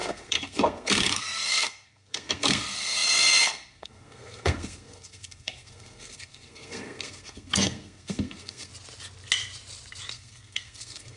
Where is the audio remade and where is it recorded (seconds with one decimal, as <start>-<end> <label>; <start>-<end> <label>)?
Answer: 0.0-8.7 remade; 8.7-10.1 recorded; 10.1-11.2 remade